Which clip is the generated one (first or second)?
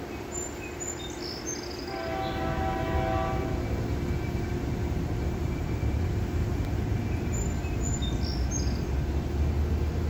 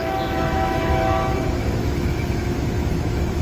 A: second